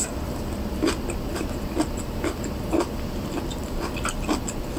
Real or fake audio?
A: real